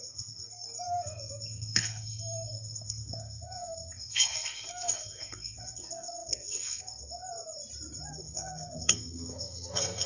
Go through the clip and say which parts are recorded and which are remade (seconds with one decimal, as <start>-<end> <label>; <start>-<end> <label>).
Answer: 0.0-7.2 remade; 7.2-8.1 recorded; 8.1-10.1 remade